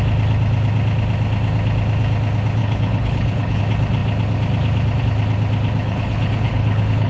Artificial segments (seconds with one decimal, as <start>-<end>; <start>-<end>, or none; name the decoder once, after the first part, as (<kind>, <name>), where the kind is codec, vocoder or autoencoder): 2.6-3.6 (codec, HILCodec); 5.8-7.1